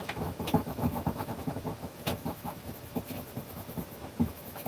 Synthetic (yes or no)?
yes